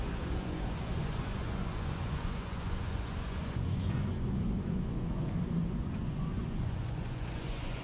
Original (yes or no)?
no